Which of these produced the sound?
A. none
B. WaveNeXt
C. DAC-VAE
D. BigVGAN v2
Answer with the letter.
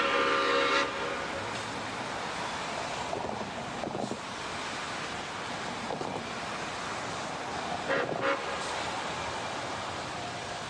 A